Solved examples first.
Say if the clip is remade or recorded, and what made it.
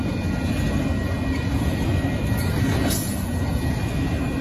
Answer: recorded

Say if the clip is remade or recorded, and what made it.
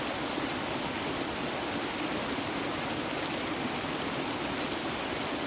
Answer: recorded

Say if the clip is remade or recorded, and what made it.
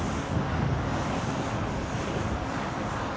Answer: remade, codec, DAC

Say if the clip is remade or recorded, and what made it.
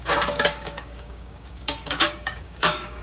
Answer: remade, codec, DAC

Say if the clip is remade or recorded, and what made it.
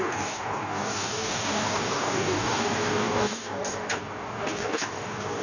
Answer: remade, codec, DAC